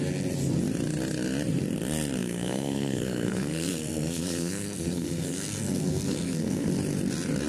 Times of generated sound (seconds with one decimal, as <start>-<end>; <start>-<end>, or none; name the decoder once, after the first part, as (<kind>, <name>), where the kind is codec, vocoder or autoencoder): 2.2-6.7 (codec, SNAC)